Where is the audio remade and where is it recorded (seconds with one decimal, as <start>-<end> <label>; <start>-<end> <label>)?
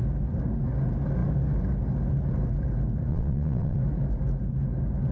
0.0-3.1 recorded; 3.1-3.8 remade; 3.8-5.1 recorded